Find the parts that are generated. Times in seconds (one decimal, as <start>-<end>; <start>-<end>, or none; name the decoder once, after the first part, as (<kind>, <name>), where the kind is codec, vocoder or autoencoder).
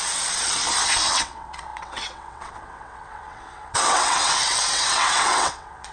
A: 0.0-0.6 (vocoder, WaveNeXt); 1.1-5.9